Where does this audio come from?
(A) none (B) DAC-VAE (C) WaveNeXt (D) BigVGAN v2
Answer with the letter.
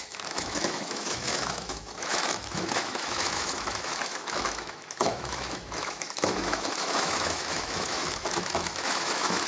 B